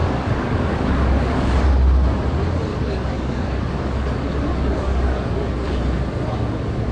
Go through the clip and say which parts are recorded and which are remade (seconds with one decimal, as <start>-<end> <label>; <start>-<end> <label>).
0.0-1.7 remade; 1.7-2.7 recorded; 2.7-5.8 remade; 5.8-6.9 recorded

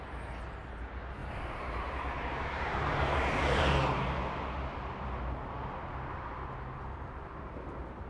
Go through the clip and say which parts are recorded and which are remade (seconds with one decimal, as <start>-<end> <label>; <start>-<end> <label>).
0.0-1.2 recorded; 1.2-3.6 remade; 3.6-8.1 recorded

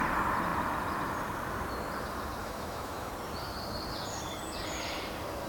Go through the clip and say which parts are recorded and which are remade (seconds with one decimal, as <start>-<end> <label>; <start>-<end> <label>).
0.0-2.4 recorded; 2.4-3.1 remade; 3.1-5.5 recorded

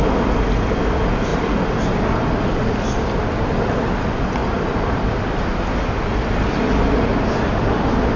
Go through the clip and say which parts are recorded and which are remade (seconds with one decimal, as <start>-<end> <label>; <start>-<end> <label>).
0.0-4.4 recorded; 4.4-5.2 remade; 5.2-8.2 recorded